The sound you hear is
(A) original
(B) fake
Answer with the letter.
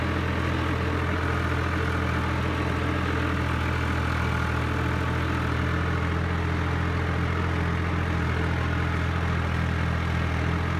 A